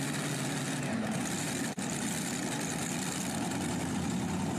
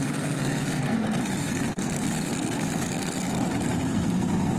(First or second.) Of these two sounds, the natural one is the first